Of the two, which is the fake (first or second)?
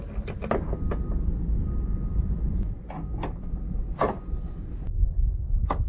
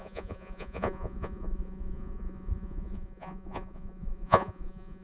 second